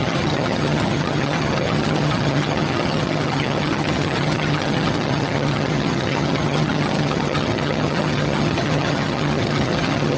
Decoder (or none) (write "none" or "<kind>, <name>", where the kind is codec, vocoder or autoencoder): vocoder, HiFi-GAN